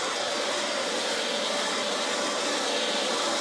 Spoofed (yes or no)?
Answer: no